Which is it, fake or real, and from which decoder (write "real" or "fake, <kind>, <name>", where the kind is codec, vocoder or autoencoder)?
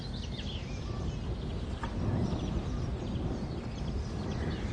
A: real